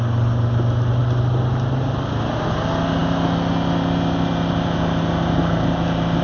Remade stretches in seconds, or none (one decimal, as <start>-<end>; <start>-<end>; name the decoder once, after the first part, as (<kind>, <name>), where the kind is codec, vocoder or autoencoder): none